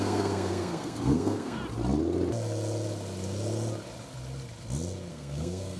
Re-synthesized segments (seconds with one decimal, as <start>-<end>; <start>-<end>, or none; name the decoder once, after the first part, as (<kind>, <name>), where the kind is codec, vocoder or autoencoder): 0.0-1.6 (codec, SNAC); 5.1-5.8